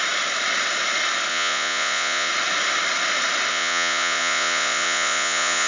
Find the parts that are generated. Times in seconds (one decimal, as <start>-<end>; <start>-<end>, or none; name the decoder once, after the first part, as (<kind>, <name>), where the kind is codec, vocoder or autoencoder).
1.3-2.3 (vocoder, Vocos); 3.5-5.7